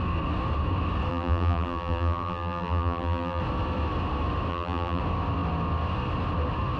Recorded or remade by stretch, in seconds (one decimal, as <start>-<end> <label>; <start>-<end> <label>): 0.0-1.1 recorded; 1.1-3.4 remade; 3.4-4.5 recorded; 4.5-5.0 remade; 5.0-6.8 recorded